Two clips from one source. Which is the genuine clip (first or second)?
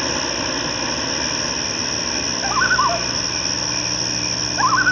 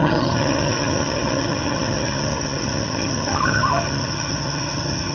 first